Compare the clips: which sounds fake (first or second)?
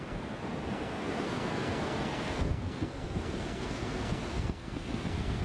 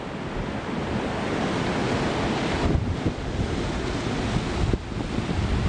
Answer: first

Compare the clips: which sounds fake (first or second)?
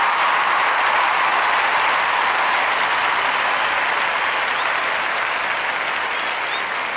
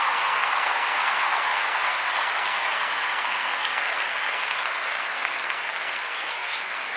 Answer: second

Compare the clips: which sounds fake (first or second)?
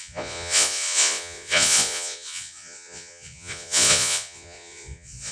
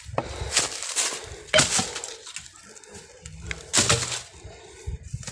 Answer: first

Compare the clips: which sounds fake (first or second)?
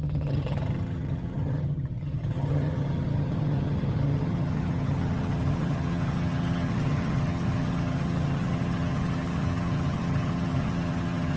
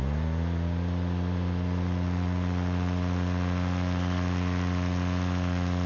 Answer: first